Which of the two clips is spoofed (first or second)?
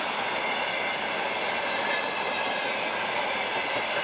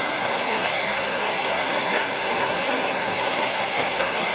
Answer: second